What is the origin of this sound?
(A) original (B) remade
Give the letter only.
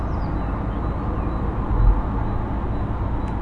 A